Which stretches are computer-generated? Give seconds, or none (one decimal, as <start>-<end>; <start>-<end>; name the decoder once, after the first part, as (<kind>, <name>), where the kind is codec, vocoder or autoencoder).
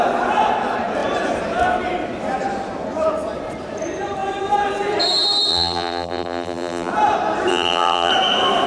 5.5-6.9 (vocoder, BigVGAN v2); 7.5-8.1